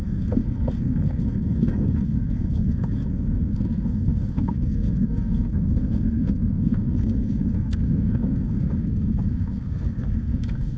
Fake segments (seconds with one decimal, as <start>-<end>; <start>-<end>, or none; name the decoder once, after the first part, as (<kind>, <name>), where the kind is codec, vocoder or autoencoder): 0.0-10.8 (codec, SNAC)

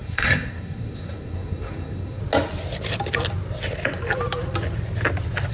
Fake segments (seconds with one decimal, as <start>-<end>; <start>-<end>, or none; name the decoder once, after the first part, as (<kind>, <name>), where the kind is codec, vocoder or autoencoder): 0.0-2.2 (codec, SNAC)

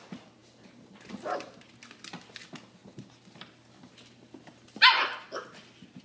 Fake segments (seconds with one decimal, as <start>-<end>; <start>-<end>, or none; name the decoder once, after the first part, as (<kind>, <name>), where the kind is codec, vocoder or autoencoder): none

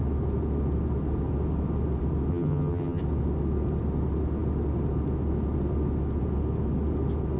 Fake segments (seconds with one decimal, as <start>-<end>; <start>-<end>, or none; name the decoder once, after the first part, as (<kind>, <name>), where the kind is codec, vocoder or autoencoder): 2.3-3.0 (vocoder, HiFi-GAN)

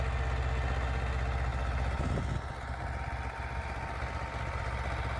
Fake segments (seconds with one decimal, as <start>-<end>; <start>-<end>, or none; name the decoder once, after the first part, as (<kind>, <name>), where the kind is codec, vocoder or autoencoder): none

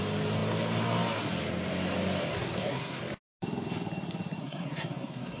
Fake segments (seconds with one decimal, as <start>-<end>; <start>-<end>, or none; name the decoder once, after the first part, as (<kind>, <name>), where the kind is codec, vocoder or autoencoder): 2.3-3.0 (codec, SNAC); 4.4-5.4

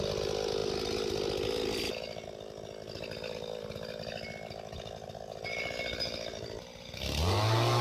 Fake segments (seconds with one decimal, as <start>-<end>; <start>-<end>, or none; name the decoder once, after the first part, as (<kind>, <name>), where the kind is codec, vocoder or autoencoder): none